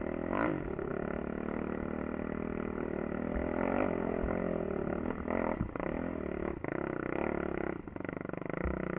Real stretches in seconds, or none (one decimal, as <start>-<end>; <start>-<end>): 0.0-9.0